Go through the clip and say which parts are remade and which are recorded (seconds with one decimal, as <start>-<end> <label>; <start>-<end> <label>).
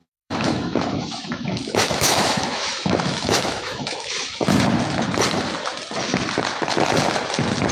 0.0-4.6 remade; 4.6-7.7 recorded